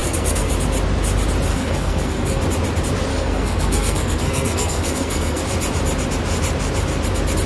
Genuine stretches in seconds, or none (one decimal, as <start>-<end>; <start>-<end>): 0.5-1.5; 2.4-3.1; 5.4-7.5